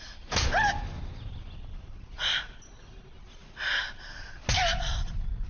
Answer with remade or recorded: recorded